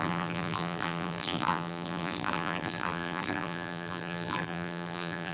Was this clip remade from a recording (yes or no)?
yes